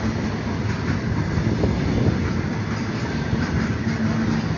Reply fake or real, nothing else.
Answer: real